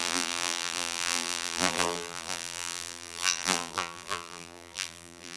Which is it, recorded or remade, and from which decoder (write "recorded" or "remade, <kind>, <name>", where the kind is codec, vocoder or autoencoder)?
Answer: remade, vocoder, BigVGAN v2